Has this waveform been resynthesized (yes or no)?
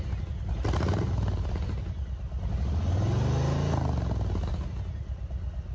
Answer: no